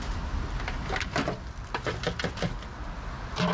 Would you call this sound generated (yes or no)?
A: no